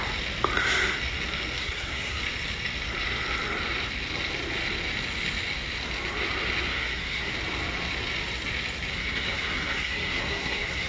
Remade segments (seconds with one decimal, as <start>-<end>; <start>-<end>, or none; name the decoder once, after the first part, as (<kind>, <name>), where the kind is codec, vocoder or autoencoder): 1.6-2.2 (codec, SNAC); 6.7-7.3; 8.9-10.9